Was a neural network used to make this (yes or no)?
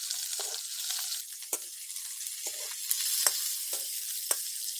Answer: no